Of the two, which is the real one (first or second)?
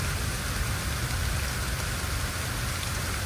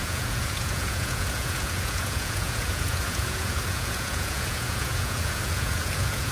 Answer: first